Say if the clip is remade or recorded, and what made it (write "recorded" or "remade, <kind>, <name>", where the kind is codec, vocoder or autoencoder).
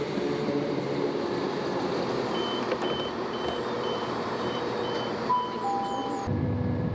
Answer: remade, vocoder, BigVGAN v2